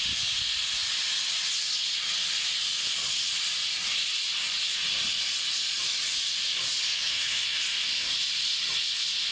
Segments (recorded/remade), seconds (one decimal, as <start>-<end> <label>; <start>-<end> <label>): 0.0-6.9 recorded; 6.9-7.6 remade; 7.6-9.3 recorded